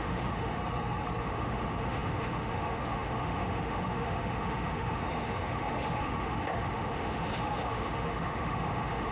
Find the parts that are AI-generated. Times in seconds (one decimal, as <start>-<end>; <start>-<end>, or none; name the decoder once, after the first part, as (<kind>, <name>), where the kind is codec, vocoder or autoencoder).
0.0-0.6 (autoencoder, DAC-VAE); 1.2-9.1